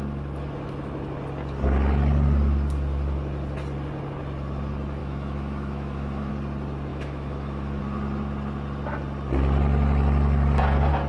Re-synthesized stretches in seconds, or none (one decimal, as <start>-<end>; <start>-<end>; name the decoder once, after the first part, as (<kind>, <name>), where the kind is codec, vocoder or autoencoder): 5.0-6.3 (autoencoder, DAC-VAE); 6.9-7.8